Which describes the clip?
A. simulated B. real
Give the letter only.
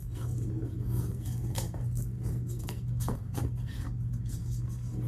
A